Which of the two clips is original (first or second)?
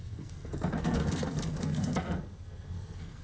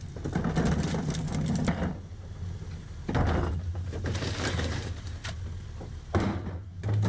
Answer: second